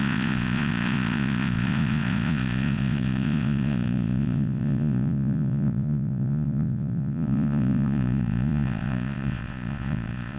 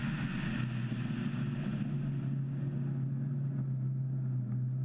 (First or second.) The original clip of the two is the second